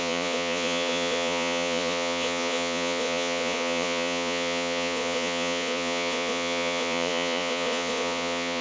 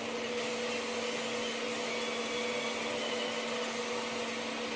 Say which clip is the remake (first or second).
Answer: first